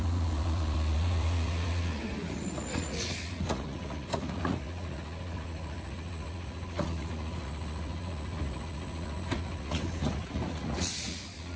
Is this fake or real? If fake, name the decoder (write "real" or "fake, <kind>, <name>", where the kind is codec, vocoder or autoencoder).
fake, vocoder, Vocos